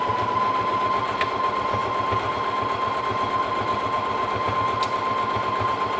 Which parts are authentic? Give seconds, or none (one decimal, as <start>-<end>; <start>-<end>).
0.0-6.0